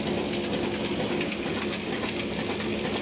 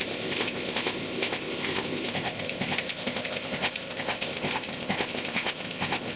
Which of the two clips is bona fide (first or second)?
first